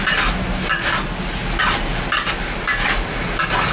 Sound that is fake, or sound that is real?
real